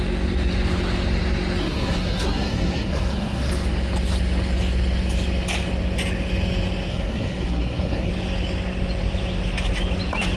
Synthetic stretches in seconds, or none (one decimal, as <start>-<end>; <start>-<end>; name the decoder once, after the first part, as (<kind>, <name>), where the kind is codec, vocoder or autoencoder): 1.6-3.5 (codec, SNAC); 6.9-8.1